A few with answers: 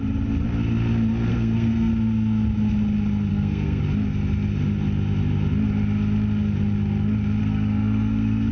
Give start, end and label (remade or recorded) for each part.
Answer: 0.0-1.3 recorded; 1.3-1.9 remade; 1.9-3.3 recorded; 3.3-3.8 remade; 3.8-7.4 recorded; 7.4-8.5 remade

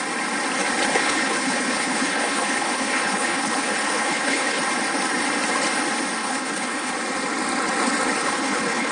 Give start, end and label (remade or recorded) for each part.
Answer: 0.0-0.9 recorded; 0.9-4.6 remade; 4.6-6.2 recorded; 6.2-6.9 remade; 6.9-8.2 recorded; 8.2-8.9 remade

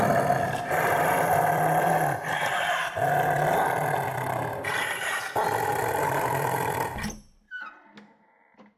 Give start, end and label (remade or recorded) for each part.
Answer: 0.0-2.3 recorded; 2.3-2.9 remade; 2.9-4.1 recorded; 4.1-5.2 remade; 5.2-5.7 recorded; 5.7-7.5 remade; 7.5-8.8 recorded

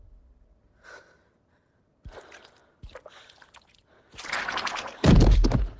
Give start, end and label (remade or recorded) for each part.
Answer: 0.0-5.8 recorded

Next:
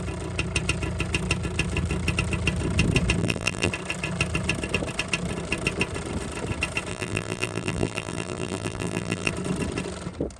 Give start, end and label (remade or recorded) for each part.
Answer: 0.0-3.2 recorded; 3.2-3.7 remade; 3.7-6.9 recorded; 6.9-9.3 remade; 9.3-10.4 recorded